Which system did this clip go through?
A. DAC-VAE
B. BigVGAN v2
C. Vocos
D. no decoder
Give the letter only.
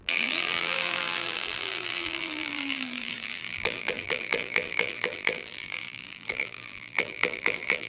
B